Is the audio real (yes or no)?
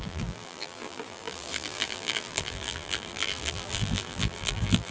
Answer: no